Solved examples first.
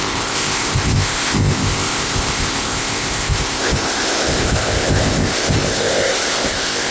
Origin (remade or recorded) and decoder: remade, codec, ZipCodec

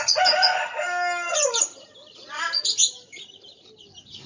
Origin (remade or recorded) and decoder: recorded